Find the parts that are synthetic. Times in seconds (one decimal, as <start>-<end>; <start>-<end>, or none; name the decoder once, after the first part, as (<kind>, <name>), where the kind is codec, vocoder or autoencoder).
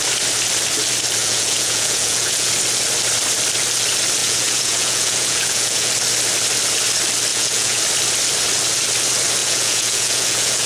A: 1.2-2.5 (vocoder, Vocos); 4.2-5.9; 7.3-7.8; 9.4-10.7